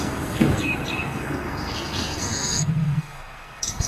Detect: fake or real fake